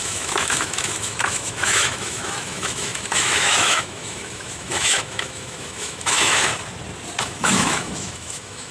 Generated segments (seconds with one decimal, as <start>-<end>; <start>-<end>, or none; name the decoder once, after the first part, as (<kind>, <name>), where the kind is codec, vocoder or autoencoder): 0.0-6.5 (autoencoder, DAC-VAE); 7.2-8.7